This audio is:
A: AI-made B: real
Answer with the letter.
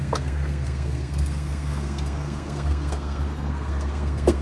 A